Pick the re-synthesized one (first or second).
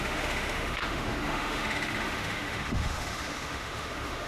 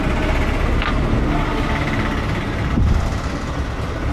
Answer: first